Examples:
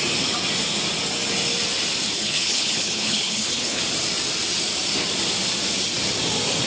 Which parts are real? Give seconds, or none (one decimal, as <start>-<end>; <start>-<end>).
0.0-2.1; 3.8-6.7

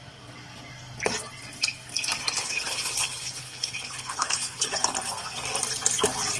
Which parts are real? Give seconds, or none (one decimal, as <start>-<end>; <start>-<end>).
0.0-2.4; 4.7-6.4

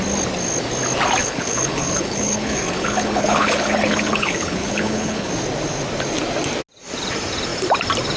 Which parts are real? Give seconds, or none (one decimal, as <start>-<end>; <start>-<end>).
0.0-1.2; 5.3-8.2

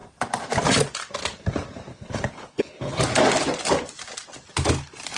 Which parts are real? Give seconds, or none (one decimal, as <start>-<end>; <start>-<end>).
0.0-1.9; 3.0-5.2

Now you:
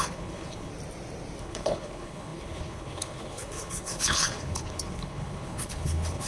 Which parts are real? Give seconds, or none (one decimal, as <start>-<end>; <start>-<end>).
0.7-1.4